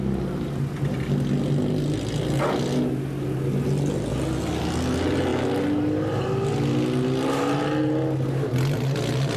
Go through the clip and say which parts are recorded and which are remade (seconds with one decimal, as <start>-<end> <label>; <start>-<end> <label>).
0.0-9.4 recorded